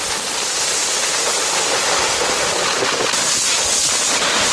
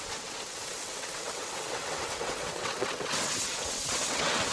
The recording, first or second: first